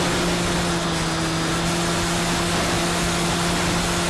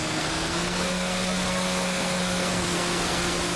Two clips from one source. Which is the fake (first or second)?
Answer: second